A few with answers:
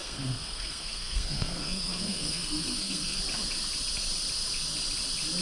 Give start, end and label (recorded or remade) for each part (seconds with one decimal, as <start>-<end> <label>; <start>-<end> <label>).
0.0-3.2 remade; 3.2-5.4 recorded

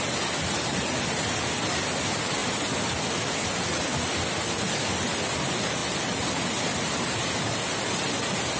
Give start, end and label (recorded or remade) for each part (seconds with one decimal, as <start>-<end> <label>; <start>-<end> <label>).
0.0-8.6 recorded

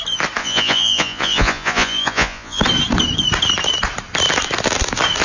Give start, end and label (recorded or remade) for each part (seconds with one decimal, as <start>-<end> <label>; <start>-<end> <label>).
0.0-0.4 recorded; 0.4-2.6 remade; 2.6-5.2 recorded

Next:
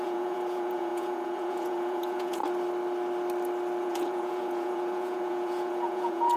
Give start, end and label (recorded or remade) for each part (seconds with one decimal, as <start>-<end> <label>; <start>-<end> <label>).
0.0-2.4 remade; 2.4-3.8 recorded; 3.8-6.4 remade

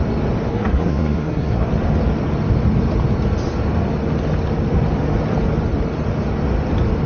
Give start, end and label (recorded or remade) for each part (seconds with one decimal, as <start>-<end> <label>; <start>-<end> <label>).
0.0-0.5 recorded; 0.5-1.7 remade; 1.7-7.1 recorded